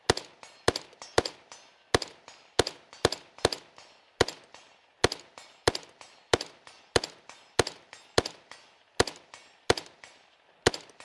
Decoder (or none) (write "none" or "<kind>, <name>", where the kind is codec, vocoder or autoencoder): none